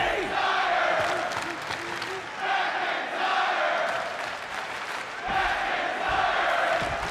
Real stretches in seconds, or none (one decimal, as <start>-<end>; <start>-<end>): 0.0-3.8; 5.5-7.1